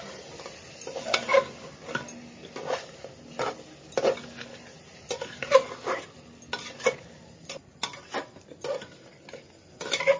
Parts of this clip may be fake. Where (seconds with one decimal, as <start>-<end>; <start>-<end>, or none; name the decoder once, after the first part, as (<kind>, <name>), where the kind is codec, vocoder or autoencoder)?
none